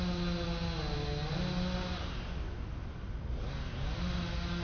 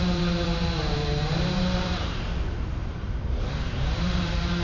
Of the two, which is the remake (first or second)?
second